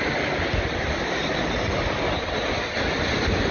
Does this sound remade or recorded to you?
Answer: recorded